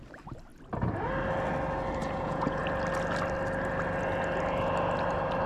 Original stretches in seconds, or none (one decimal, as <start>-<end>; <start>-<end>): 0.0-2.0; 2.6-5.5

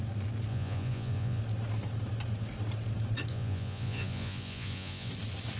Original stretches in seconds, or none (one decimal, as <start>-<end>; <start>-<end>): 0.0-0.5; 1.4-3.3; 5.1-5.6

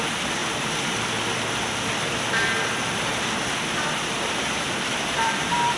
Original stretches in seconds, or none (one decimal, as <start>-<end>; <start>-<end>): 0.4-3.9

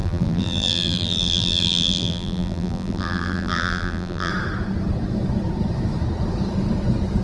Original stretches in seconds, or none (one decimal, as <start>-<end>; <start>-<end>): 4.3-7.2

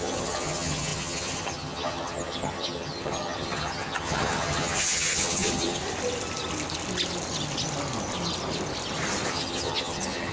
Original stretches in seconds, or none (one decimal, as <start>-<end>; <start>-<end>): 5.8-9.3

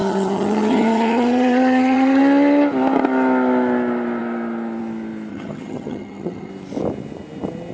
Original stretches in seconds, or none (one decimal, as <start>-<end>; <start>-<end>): 2.2-5.3; 6.5-7.7

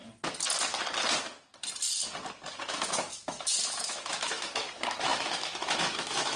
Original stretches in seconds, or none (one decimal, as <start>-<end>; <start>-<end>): 0.0-2.6

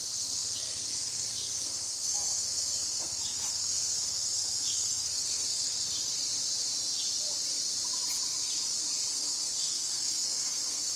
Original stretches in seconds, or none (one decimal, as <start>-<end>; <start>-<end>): 6.1-9.1